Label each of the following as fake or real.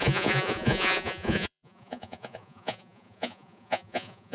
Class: fake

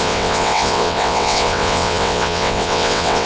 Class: fake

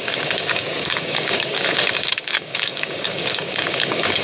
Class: fake